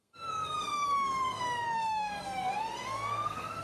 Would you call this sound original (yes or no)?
no